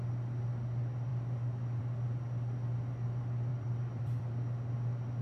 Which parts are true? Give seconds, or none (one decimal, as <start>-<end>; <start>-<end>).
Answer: 0.0-3.5; 4.3-5.2